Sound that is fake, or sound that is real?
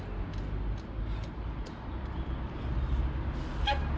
real